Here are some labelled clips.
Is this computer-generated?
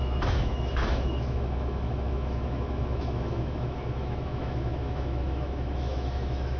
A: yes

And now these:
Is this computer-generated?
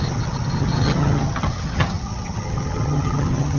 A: yes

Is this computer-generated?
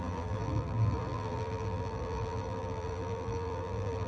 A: yes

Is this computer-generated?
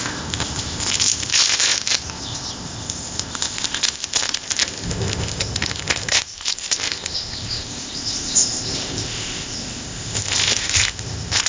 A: yes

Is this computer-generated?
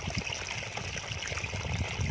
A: no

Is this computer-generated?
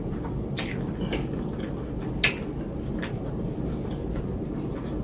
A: no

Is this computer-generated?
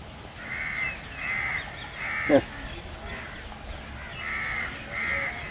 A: no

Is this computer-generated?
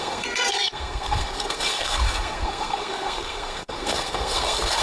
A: yes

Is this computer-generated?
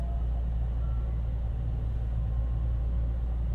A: no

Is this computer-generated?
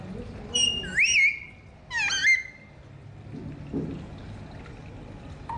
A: no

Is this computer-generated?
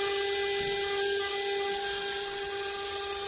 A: no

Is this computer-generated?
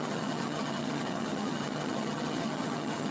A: yes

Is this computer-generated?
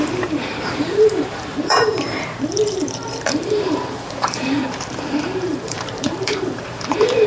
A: yes